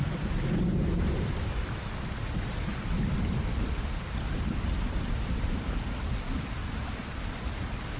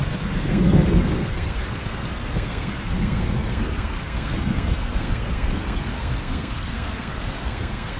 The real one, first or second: first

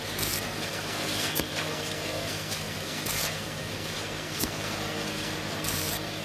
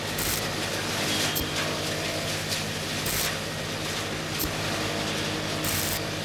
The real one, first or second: second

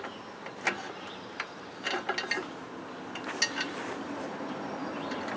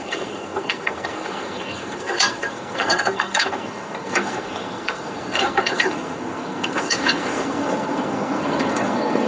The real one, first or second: first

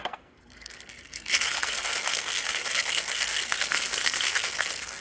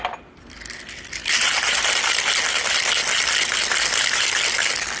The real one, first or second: second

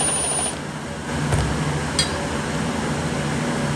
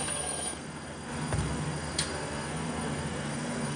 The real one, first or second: first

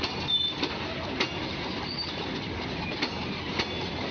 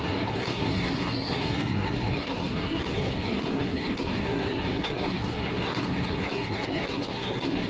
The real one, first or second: first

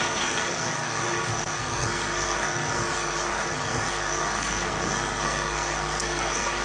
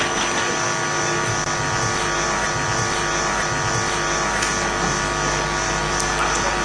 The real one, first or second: second